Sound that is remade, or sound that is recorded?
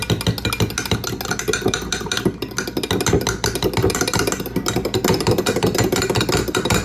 recorded